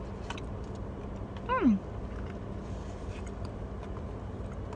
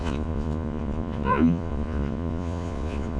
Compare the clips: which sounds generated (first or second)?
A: second